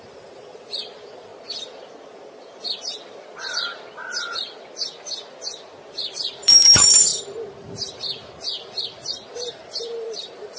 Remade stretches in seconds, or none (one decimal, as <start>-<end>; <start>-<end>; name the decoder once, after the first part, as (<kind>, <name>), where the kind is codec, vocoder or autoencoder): 0.0-1.3 (vocoder, BigVGAN v2); 5.9-7.1; 9.3-10.6